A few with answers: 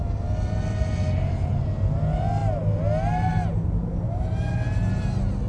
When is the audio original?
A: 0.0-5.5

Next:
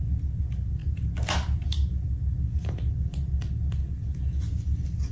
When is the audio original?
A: 0.0-5.1

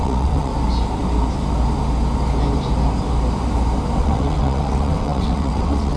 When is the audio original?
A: 0.5-4.0

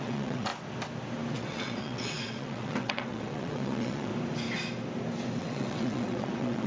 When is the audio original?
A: 0.5-1.3; 4.1-5.4

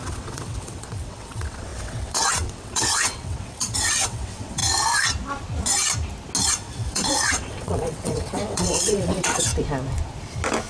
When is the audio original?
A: 4.6-6.5; 9.5-10.7

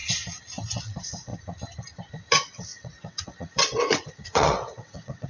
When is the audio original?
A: 0.0-0.8; 1.3-2.1

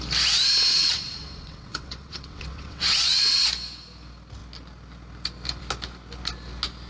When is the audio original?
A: 0.0-0.7; 3.4-6.9

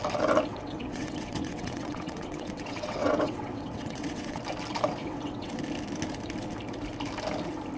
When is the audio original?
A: 0.0-0.5; 4.4-5.0; 5.6-7.8